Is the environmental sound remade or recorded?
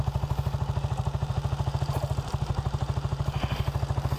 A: remade